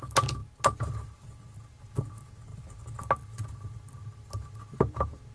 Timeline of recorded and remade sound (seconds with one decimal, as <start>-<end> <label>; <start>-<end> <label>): 0.0-5.3 recorded